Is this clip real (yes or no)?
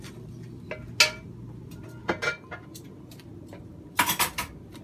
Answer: yes